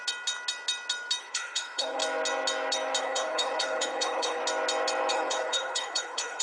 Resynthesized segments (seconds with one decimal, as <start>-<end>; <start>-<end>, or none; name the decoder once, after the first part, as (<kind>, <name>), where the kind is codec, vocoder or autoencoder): 1.2-2.0 (codec, HILCodec); 3.0-4.4; 5.1-6.4